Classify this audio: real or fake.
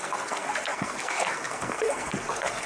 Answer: fake